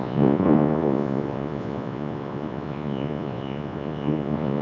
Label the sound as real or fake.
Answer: fake